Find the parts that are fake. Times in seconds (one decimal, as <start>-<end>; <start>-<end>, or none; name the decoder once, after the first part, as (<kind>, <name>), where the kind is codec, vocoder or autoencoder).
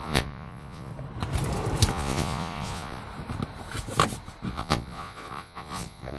0.0-0.9 (vocoder, Vocos); 1.9-3.0; 4.5-6.2